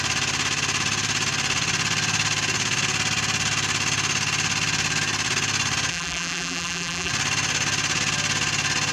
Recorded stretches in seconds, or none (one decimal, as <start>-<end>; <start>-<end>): 0.0-5.9; 7.1-8.9